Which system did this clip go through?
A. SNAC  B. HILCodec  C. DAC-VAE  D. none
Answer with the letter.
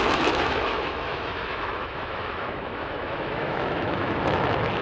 C